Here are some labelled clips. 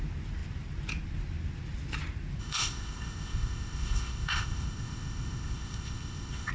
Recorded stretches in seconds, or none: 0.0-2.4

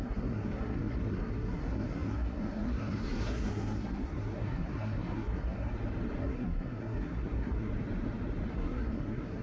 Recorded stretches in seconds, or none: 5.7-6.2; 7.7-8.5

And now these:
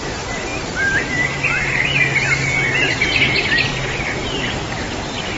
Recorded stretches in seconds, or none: 0.0-4.2; 4.8-5.4